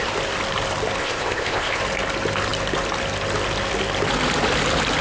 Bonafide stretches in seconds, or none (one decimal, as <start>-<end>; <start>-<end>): 0.0-1.0; 1.8-5.0